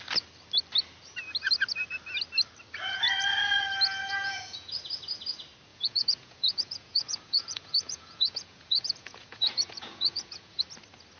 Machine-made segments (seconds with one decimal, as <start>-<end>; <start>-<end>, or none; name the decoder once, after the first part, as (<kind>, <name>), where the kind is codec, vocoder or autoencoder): 4.0-4.7 (vocoder, Vocos); 5.7-10.6